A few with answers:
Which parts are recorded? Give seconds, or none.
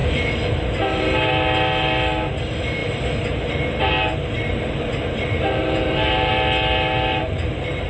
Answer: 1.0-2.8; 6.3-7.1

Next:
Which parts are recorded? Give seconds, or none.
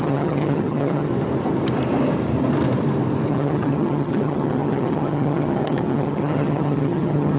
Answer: 1.1-3.3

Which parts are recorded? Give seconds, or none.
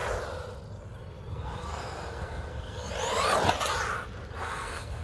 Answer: 0.0-1.3; 2.9-4.4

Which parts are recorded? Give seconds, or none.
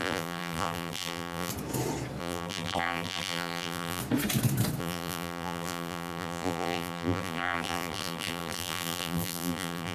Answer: 1.5-2.2; 4.0-4.8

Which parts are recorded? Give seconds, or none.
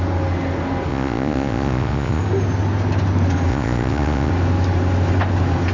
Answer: 0.0-0.9; 2.2-3.5; 4.3-5.7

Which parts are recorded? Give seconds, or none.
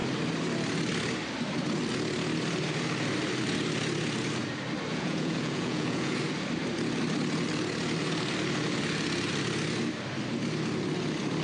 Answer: 0.0-4.9; 6.2-11.4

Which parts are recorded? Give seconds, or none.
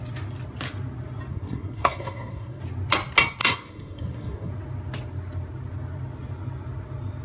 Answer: 0.0-1.3; 2.6-3.4; 4.5-7.2